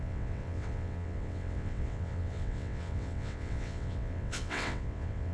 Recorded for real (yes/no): no